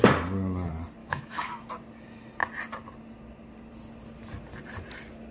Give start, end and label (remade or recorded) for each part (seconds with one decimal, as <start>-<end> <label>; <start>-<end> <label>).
0.0-1.0 recorded; 1.0-1.7 remade; 1.7-5.3 recorded

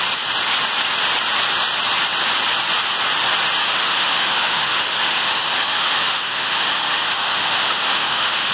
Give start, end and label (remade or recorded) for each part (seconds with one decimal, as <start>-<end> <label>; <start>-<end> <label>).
0.0-3.6 recorded; 3.6-8.5 remade